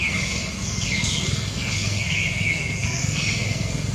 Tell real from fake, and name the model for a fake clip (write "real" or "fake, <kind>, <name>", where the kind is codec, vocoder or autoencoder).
fake, codec, SNAC